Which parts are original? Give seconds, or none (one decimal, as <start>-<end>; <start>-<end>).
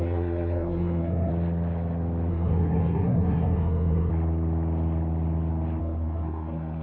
1.3-2.3; 4.1-5.8